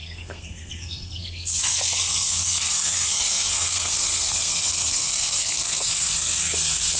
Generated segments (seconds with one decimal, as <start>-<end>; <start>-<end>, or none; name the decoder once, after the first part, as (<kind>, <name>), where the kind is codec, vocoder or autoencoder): 0.0-7.0 (codec, SNAC)